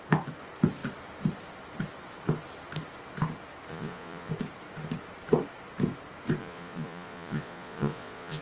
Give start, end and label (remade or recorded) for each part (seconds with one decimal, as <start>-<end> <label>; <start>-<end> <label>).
0.0-3.7 recorded; 3.7-4.3 remade; 4.3-6.4 recorded; 6.4-8.4 remade